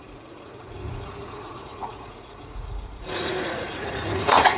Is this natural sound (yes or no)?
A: no